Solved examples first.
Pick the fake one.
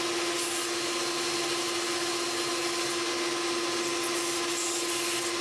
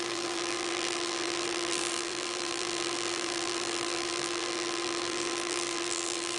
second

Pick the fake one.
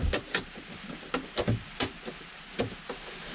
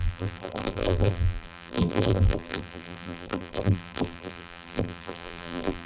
second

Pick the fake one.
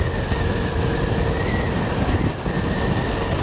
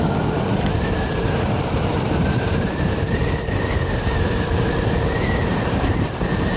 second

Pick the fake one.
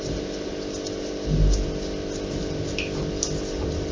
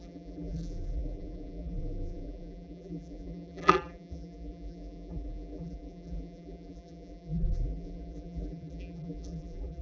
second